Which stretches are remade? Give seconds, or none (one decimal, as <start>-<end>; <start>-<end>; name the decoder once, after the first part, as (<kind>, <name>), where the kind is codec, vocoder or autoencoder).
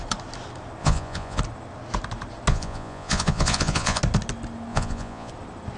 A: 0.8-1.4 (vocoder, Vocos); 2.5-4.0; 4.7-5.3